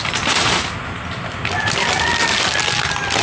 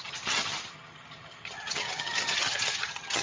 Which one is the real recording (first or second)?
first